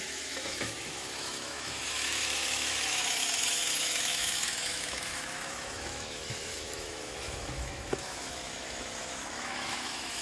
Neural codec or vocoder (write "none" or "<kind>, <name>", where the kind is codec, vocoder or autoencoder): autoencoder, DAC-VAE